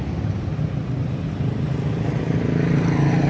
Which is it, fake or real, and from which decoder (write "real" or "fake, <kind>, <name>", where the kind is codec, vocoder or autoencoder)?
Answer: real